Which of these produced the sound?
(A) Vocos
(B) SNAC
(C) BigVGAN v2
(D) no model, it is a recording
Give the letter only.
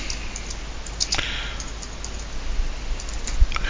D